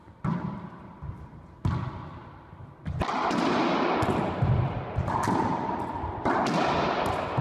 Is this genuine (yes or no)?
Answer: yes